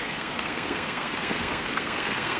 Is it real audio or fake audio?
fake